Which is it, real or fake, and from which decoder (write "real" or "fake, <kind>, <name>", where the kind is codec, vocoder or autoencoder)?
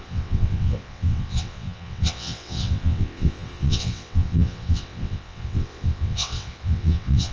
fake, vocoder, WaveNeXt